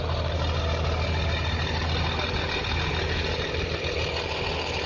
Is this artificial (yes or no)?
no